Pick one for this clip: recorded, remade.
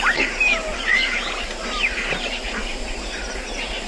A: remade